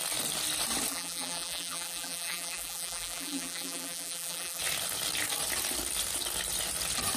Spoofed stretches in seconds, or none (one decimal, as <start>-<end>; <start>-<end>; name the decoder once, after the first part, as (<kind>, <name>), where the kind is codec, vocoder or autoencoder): 0.9-4.6 (vocoder, BigVGAN v2)